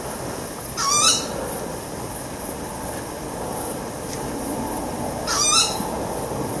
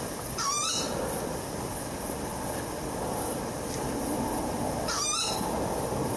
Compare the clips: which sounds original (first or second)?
first